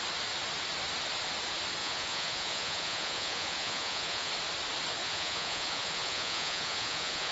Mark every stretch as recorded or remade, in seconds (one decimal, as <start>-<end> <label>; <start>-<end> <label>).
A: 0.0-1.8 recorded; 1.8-4.3 remade; 4.3-5.0 recorded; 5.0-7.3 remade